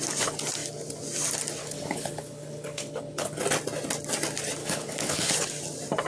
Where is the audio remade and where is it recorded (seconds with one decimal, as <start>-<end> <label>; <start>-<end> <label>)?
0.0-1.6 recorded; 1.6-3.4 remade; 3.4-4.6 recorded; 4.6-5.3 remade; 5.3-6.1 recorded